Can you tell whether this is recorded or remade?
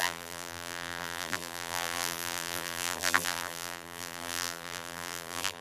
remade